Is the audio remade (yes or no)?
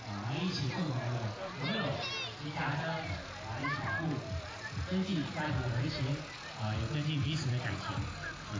no